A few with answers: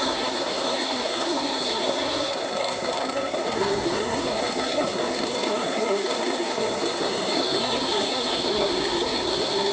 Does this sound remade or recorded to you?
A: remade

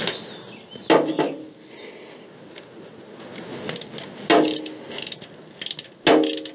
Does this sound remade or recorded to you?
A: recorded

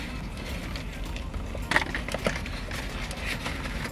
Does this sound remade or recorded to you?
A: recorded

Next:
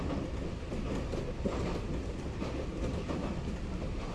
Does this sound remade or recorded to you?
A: recorded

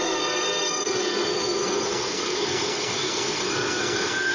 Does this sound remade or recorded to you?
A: remade